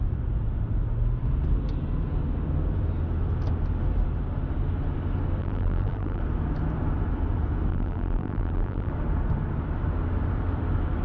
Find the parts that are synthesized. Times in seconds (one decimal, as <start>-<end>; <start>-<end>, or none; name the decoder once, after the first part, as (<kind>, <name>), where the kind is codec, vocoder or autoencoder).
5.4-6.2 (vocoder, BigVGAN v2); 7.7-8.9